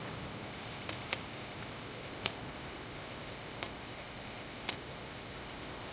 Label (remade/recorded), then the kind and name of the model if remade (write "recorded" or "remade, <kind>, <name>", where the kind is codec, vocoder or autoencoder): remade, codec, ZipCodec